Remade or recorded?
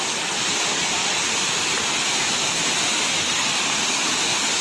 recorded